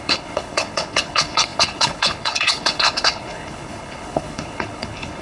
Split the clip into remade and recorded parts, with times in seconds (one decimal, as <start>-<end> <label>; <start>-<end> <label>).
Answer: 0.0-5.2 remade